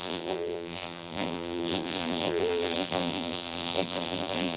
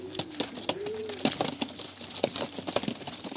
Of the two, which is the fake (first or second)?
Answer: first